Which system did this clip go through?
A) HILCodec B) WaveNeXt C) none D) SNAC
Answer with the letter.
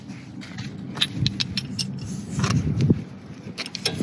C